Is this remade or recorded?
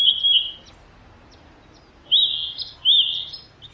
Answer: recorded